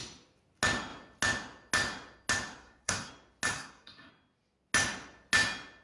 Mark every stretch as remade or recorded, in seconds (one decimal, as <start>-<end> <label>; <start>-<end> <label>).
0.0-2.6 recorded; 2.6-3.1 remade; 3.1-3.5 recorded; 3.5-4.1 remade; 4.1-5.8 recorded